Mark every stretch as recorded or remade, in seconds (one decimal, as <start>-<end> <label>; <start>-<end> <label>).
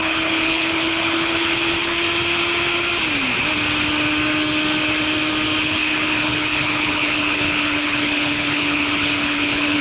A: 0.0-1.9 remade; 1.9-5.6 recorded; 5.6-9.8 remade